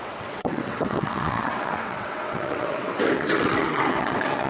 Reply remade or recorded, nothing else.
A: remade